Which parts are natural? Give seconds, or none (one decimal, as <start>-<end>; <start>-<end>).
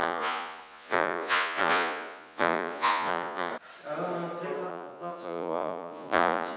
3.5-4.7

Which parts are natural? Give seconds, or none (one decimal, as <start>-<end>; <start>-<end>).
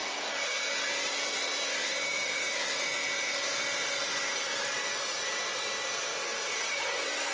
0.0-2.1; 3.1-4.1; 5.2-6.3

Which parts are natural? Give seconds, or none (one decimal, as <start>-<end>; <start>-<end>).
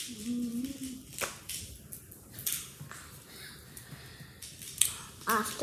0.0-5.6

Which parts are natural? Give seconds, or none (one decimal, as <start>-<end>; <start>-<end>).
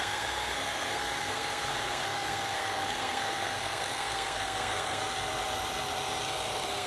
5.0-6.2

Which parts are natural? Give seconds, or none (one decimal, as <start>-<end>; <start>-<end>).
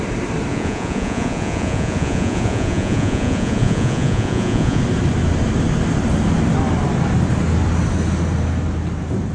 0.0-0.5; 4.8-9.3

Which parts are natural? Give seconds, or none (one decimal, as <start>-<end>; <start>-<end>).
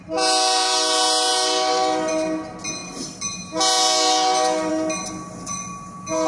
0.0-6.3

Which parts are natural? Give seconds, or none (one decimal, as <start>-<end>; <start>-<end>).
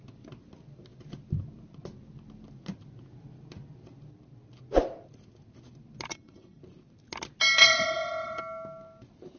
0.0-6.1; 6.6-7.6; 8.4-9.4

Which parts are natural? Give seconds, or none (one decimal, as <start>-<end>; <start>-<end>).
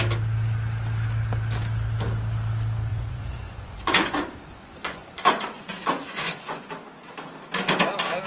0.0-2.9; 6.7-8.3